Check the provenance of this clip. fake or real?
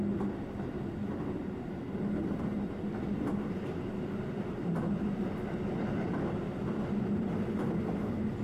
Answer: real